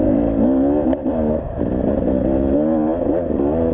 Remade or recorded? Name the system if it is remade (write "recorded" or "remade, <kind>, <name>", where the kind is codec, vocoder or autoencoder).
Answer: recorded